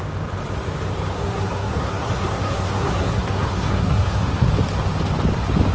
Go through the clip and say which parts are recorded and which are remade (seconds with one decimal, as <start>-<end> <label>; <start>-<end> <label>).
0.0-1.1 recorded; 1.1-4.5 remade; 4.5-5.7 recorded